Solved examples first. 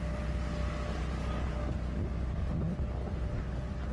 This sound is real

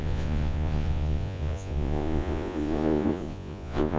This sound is fake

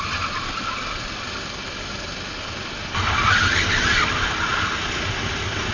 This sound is real